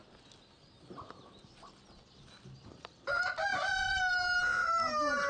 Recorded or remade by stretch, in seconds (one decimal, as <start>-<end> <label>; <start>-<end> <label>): 0.0-5.3 recorded